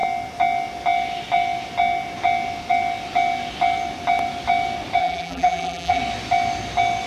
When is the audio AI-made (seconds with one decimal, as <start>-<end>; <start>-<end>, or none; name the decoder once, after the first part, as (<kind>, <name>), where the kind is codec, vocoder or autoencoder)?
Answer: 5.0-6.0 (vocoder, BigVGAN v2)